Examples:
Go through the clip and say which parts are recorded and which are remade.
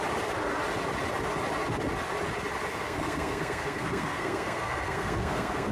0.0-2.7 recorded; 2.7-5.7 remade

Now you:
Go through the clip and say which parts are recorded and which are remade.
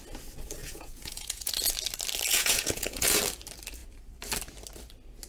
0.0-0.6 recorded; 0.6-1.5 remade; 1.5-2.3 recorded; 2.3-3.2 remade; 3.2-5.3 recorded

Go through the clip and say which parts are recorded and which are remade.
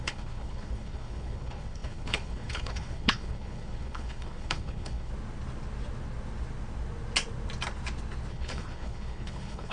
0.0-5.1 remade; 5.1-8.3 recorded; 8.3-9.7 remade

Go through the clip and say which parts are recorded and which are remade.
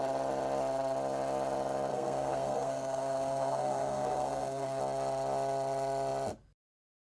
0.0-1.9 recorded; 1.9-4.8 remade; 4.8-7.1 recorded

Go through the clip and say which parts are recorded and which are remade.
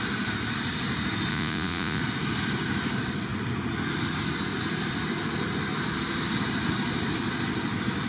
0.0-1.3 recorded; 1.3-2.0 remade; 2.0-8.1 recorded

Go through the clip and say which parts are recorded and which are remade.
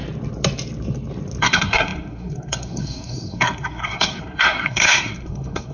0.0-1.4 recorded; 1.4-5.7 remade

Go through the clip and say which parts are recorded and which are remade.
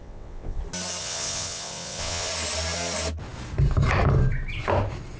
0.0-0.6 remade; 0.6-1.0 recorded; 1.0-2.3 remade; 2.3-5.2 recorded